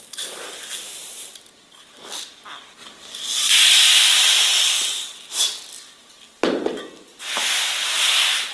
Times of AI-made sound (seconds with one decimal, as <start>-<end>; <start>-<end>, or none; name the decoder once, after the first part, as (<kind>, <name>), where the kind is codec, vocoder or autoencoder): none